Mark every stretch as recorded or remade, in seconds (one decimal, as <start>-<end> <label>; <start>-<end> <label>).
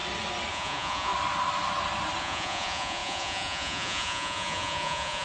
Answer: 0.0-0.5 recorded; 0.5-1.1 remade; 1.1-2.2 recorded; 2.2-5.2 remade